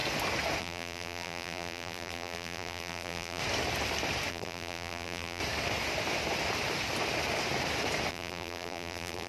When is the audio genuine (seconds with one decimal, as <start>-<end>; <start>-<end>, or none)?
0.0-0.6; 3.4-4.3; 5.4-8.1